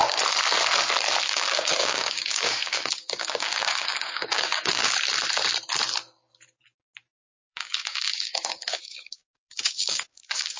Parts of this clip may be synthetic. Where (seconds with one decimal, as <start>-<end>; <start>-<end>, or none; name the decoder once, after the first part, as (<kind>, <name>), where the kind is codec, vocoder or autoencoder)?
1.3-4.8 (codec, DAC); 7.1-10.6